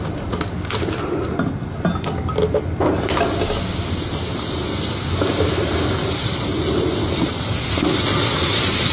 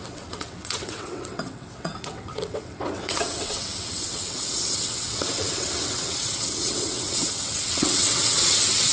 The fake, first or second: second